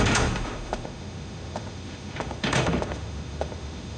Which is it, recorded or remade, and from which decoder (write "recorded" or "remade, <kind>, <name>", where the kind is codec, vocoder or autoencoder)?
remade, autoencoder, DAC-VAE